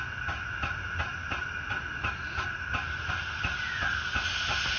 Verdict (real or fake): real